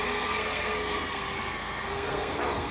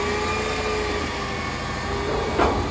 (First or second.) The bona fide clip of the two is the second